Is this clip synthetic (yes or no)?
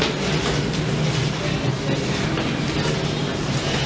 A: no